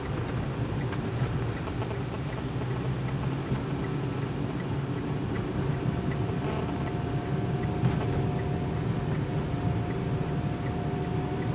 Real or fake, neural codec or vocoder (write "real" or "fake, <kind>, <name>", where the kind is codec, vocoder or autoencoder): real